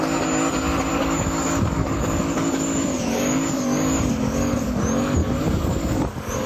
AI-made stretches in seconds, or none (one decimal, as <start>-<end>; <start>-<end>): 0.9-4.8; 5.2-6.5